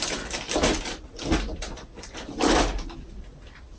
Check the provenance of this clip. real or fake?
real